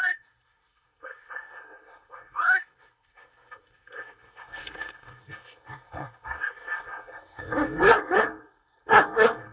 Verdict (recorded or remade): remade